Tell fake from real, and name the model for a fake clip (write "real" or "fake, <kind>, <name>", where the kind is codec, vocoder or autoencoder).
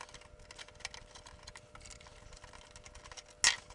real